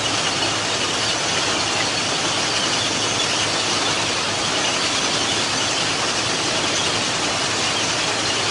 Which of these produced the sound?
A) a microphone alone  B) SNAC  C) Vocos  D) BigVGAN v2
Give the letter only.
A